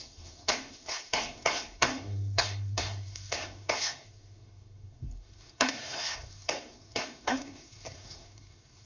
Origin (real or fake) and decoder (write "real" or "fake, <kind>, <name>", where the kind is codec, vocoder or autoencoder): fake, codec, SNAC